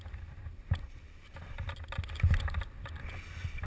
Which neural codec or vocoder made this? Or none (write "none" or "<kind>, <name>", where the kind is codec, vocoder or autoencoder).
none